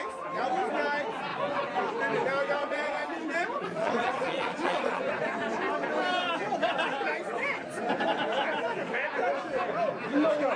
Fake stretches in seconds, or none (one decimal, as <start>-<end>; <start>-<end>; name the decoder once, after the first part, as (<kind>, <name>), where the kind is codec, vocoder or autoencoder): 2.6-5.0 (vocoder, Vocos)